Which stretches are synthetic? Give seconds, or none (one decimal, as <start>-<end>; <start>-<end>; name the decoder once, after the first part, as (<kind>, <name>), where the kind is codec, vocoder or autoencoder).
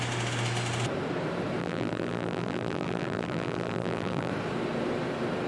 1.6-4.3 (vocoder, BigVGAN v2)